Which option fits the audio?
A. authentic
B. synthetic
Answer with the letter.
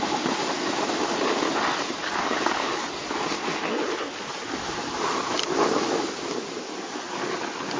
A